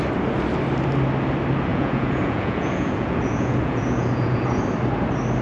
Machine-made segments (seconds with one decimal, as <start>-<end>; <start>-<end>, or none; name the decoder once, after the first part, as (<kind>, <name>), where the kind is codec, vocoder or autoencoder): 1.7-4.6 (vocoder, Vocos)